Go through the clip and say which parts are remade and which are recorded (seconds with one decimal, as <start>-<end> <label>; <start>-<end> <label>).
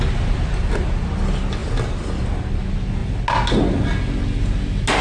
0.0-5.0 recorded